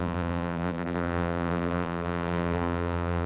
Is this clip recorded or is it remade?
remade